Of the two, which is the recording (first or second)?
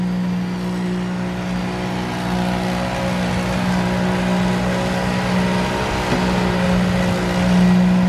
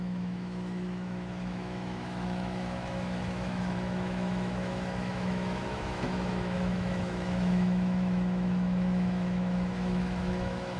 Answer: first